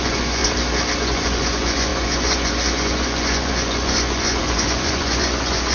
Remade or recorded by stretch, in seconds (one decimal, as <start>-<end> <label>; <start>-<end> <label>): 0.0-0.4 remade; 0.4-1.0 recorded; 1.0-5.7 remade